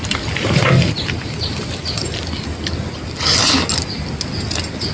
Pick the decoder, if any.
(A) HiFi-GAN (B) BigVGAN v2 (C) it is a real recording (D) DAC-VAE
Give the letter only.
C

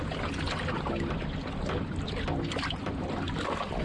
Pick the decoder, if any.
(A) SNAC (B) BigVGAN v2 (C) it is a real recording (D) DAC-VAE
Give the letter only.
C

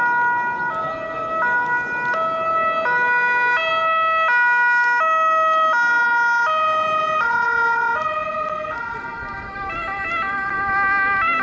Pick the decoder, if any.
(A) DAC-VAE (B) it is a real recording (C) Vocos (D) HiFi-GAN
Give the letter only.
B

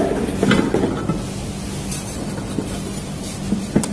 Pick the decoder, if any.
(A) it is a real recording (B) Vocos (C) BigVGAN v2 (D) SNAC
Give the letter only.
A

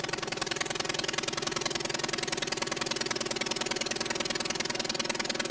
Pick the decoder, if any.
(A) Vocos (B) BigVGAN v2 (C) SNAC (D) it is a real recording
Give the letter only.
D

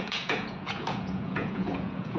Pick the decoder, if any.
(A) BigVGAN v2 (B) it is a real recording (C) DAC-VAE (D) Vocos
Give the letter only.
D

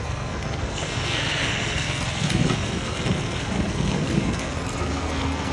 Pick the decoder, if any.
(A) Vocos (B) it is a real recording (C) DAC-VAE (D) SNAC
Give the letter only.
D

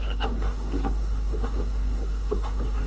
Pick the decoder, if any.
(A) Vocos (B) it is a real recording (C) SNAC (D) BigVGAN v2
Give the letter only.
C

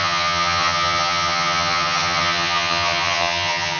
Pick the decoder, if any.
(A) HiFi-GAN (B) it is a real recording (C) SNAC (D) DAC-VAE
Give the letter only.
A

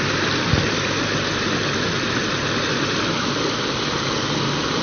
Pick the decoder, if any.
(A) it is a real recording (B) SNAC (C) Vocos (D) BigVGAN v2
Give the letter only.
A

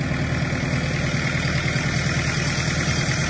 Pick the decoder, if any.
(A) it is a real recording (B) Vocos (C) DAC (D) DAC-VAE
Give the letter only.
A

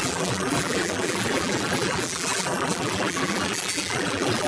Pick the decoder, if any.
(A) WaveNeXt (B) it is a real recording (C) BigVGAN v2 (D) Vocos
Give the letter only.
C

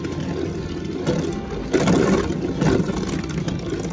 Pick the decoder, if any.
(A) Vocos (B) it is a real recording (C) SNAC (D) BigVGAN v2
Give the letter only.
B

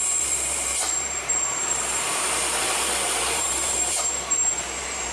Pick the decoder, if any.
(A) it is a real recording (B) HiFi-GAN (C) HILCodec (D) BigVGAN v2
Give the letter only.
D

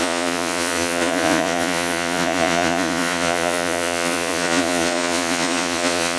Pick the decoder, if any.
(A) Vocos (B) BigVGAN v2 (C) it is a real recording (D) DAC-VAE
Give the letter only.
A